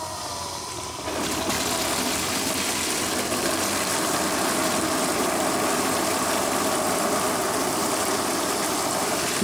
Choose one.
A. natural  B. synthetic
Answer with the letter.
A